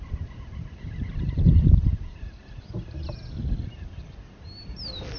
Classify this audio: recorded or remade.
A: recorded